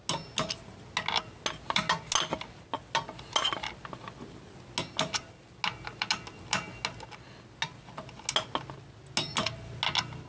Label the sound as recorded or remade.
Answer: recorded